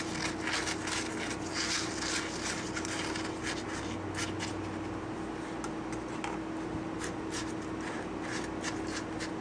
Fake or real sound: real